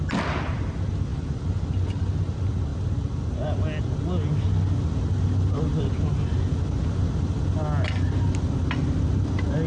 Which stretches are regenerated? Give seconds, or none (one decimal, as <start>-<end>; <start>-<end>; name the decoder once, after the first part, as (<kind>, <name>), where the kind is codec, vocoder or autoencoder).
none